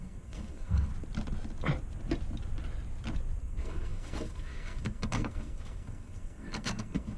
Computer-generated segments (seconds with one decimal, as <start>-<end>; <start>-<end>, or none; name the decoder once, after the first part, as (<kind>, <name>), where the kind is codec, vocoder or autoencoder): 0.0-0.9 (codec, SNAC); 3.4-7.2